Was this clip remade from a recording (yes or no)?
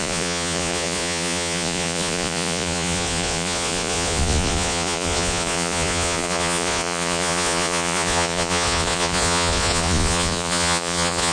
yes